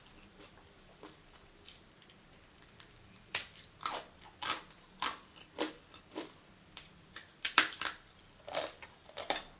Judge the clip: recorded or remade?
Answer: remade